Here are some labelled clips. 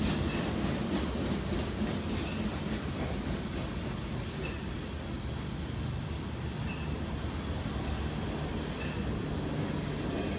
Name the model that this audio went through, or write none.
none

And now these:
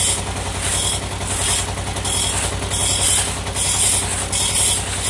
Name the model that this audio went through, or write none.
none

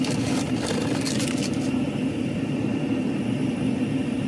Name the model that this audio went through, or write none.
none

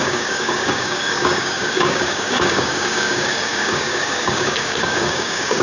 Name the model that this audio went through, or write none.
codec, DAC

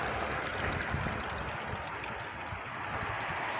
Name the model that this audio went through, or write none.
none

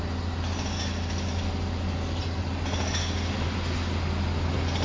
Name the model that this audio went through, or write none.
none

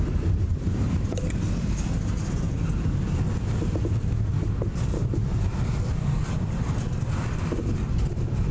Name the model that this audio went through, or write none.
none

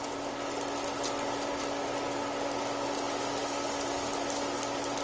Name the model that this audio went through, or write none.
none